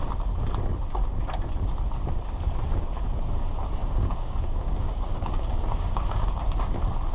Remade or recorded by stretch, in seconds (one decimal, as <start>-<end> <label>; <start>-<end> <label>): 0.0-3.8 recorded; 3.8-6.4 remade; 6.4-7.1 recorded